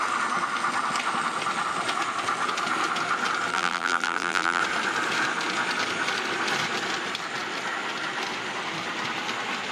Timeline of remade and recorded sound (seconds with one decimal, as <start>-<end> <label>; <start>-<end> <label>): 0.0-3.5 recorded; 3.5-4.6 remade; 4.6-9.7 recorded

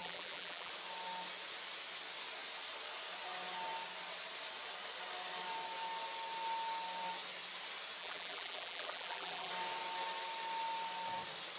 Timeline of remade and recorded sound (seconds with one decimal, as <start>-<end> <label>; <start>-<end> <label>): 0.0-0.7 remade; 0.7-8.0 recorded; 8.0-9.5 remade; 9.5-11.6 recorded

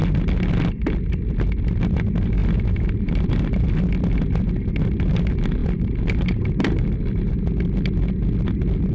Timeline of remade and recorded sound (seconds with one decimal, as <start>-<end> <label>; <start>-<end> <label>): 0.0-2.4 recorded; 2.4-3.7 remade; 3.7-5.6 recorded; 5.6-7.3 remade; 7.3-8.9 recorded

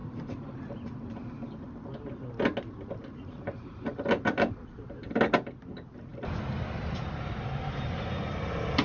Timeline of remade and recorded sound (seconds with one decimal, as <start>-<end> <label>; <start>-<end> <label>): 0.0-1.2 remade; 1.2-3.0 recorded; 3.0-5.2 remade; 5.2-8.8 recorded